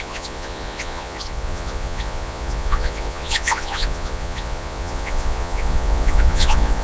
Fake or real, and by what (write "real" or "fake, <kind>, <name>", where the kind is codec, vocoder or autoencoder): fake, vocoder, Vocos